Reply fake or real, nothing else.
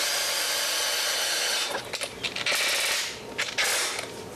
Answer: real